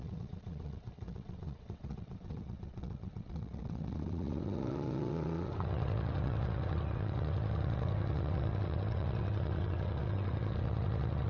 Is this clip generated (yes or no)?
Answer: yes